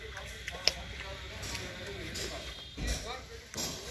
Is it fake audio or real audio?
real